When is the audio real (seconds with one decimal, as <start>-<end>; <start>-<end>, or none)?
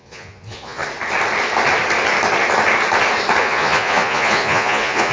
0.8-3.4